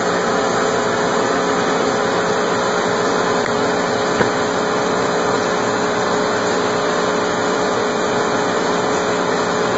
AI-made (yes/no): no